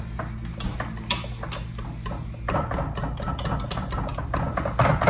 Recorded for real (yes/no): yes